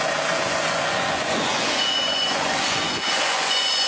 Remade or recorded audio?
remade